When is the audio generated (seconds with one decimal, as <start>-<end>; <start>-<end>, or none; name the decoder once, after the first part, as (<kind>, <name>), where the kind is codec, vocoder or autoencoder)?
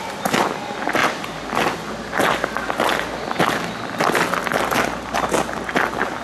none